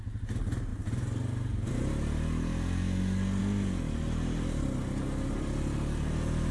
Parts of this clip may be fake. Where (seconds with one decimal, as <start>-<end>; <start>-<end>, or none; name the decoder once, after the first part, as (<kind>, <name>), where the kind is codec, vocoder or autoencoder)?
none